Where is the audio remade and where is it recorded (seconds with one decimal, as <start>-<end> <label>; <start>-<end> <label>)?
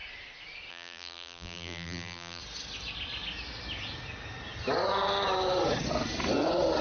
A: 0.0-0.7 recorded; 0.7-2.4 remade; 2.4-6.8 recorded